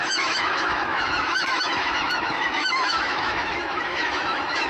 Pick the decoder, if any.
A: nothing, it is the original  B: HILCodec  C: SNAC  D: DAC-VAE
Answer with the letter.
D